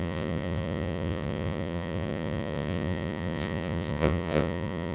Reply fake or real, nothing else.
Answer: fake